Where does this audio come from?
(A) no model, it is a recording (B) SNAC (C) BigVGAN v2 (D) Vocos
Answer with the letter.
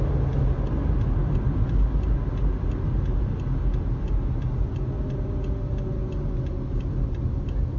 A